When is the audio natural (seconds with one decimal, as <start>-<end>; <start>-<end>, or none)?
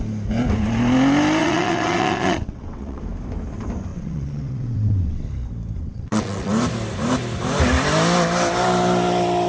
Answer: 0.0-1.4; 3.0-3.9; 5.2-5.8; 6.5-9.5